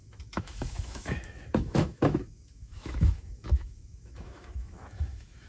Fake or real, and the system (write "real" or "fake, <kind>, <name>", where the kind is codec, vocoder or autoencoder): fake, autoencoder, DAC-VAE